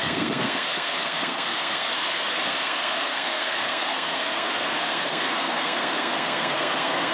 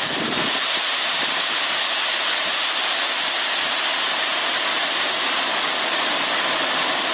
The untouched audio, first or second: second